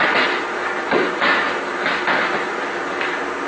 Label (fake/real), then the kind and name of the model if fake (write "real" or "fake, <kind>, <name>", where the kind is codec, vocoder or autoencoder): real